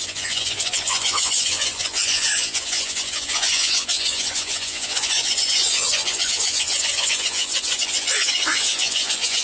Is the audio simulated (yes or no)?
yes